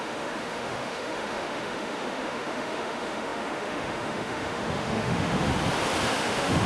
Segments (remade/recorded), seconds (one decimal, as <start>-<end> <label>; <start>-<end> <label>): 0.0-5.5 remade; 5.5-6.1 recorded; 6.1-6.7 remade